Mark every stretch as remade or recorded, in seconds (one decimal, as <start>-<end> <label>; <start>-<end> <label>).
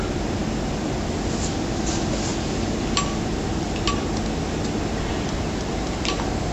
0.0-6.5 recorded